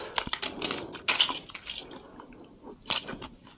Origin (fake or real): real